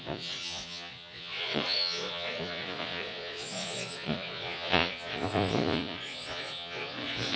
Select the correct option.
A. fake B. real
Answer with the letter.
A